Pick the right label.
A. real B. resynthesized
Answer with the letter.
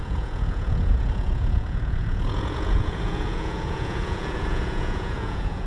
B